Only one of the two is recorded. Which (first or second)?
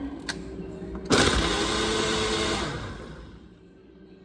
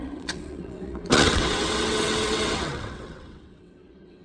first